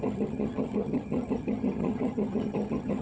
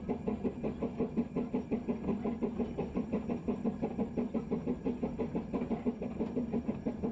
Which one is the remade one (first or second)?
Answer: first